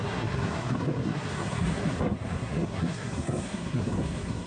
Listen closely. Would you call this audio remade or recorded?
remade